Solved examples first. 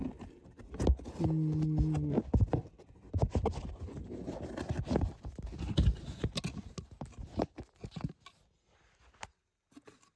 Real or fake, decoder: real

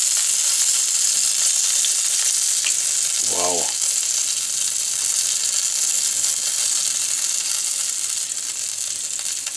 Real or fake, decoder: real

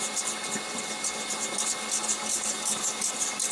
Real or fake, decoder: fake, vocoder, BigVGAN v2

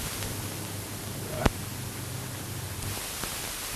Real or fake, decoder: real